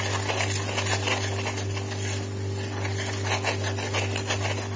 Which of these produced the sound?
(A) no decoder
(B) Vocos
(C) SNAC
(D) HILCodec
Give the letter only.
A